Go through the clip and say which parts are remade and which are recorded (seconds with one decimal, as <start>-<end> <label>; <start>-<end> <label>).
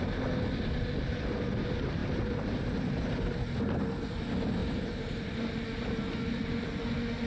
0.0-2.0 recorded; 2.0-3.3 remade; 3.3-4.6 recorded; 4.6-5.3 remade; 5.3-7.3 recorded